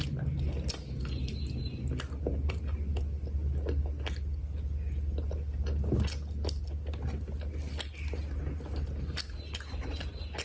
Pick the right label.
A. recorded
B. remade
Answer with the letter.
A